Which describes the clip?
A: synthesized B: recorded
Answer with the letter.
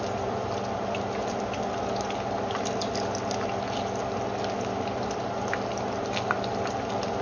B